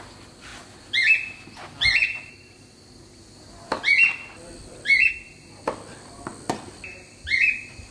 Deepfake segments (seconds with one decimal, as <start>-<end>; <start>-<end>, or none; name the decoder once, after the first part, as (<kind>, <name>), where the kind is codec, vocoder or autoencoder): none